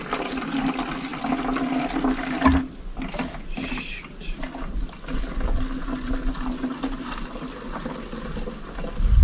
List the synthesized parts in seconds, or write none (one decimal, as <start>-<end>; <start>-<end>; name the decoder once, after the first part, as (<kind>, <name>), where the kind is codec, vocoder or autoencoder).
none